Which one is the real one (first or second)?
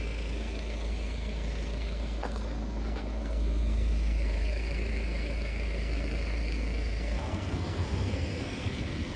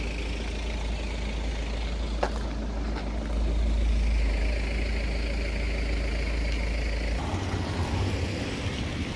second